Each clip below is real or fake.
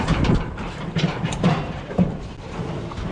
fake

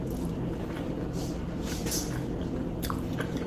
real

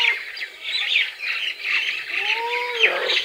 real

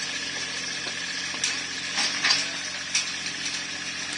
real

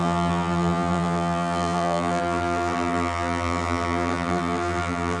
fake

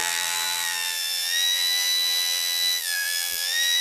fake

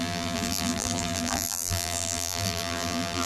fake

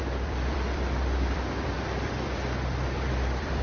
fake